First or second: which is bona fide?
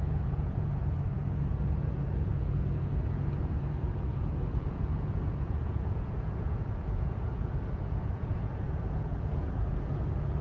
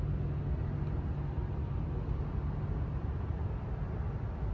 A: second